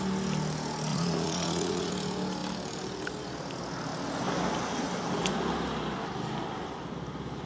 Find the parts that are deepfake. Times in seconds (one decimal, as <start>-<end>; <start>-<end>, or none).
0.9-1.9